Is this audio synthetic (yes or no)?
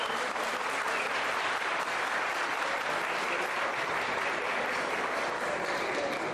no